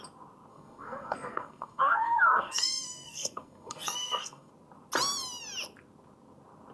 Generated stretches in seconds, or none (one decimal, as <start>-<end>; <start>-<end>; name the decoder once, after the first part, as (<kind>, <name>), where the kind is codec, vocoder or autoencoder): 0.5-4.5 (codec, SNAC)